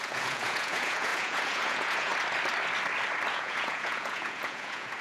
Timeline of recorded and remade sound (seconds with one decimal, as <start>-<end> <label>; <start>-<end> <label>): 0.0-2.1 remade; 2.1-3.3 recorded; 3.3-5.0 remade